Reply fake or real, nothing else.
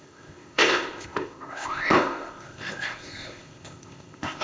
fake